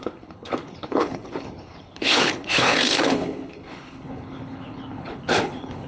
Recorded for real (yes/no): no